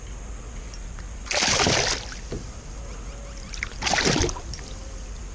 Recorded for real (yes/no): yes